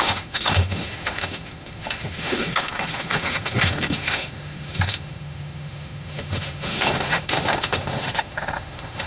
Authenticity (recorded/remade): remade